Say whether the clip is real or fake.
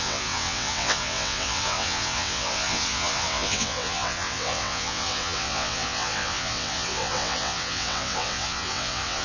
fake